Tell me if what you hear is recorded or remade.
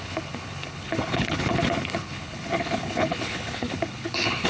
remade